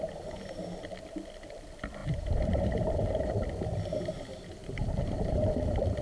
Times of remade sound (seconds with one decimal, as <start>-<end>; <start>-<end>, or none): 2.0-3.3; 4.6-5.5